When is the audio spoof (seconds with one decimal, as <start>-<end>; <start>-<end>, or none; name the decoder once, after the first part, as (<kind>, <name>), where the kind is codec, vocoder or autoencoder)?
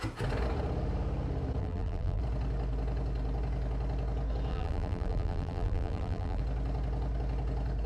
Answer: 1.6-2.2 (vocoder, BigVGAN v2); 4.5-6.4